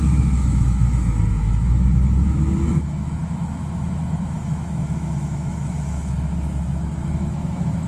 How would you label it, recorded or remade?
remade